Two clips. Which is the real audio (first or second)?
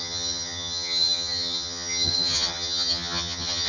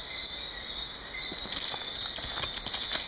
second